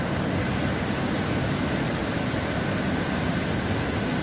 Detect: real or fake real